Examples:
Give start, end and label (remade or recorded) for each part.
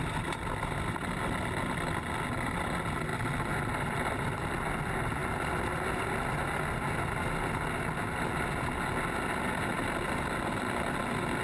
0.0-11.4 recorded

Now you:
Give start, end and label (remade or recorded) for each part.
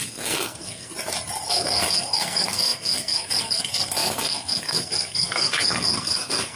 0.0-0.9 remade; 0.9-1.5 recorded; 1.5-6.6 remade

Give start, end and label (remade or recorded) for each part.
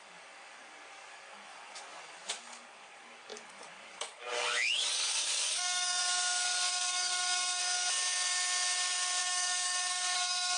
0.0-6.0 remade; 6.0-6.7 recorded; 6.7-7.6 remade; 7.6-9.2 recorded; 9.2-10.6 remade